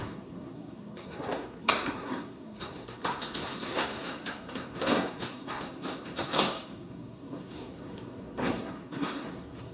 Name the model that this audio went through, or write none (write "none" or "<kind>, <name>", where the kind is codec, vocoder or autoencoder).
codec, SNAC